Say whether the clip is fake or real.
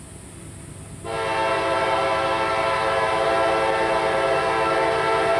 real